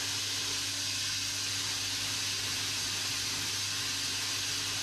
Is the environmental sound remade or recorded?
recorded